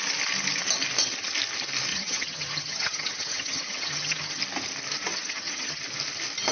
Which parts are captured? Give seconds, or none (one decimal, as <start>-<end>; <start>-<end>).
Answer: 0.0-1.9; 4.4-5.1; 5.8-6.5